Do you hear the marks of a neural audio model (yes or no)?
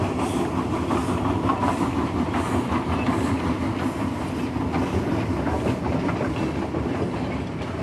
no